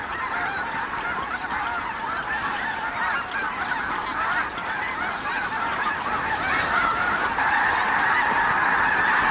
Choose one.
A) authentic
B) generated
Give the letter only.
A